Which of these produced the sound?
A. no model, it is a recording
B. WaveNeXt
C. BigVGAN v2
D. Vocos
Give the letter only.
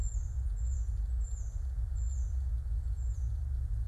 D